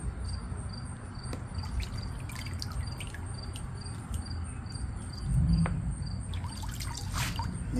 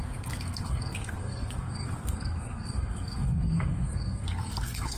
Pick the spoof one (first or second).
second